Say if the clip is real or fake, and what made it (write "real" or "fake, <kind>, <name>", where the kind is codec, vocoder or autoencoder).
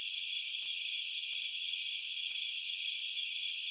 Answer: fake, vocoder, Vocos